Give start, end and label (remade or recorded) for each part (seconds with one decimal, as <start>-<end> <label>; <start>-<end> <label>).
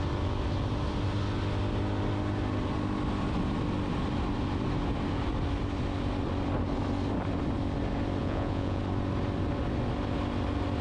0.0-8.2 recorded; 8.2-8.8 remade; 8.8-10.8 recorded